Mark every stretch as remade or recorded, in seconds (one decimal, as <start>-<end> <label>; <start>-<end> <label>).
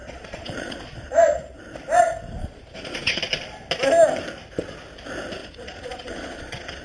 0.0-1.6 remade; 1.6-2.4 recorded; 2.4-3.2 remade; 3.2-5.4 recorded; 5.4-6.8 remade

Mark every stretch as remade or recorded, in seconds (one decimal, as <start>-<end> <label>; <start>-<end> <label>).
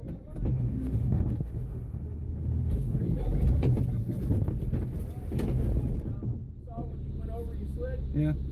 0.0-0.5 recorded; 0.5-3.0 remade; 3.0-8.5 recorded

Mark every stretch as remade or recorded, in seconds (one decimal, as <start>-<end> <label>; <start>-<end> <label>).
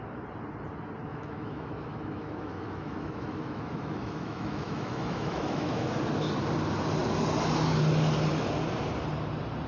0.0-1.1 recorded; 1.1-6.0 remade; 6.0-9.7 recorded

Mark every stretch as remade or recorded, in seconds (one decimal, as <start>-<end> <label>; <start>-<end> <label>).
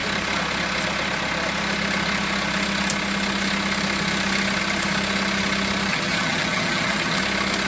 0.0-5.9 recorded; 5.9-7.2 remade; 7.2-7.7 recorded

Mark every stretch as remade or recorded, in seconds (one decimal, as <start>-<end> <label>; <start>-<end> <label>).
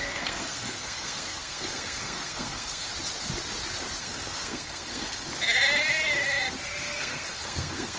0.0-2.9 remade; 2.9-4.0 recorded; 4.0-5.3 remade; 5.3-6.8 recorded; 6.8-8.0 remade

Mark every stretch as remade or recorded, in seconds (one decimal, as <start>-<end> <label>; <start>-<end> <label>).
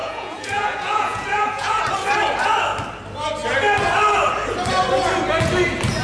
0.0-1.8 remade; 1.8-6.0 recorded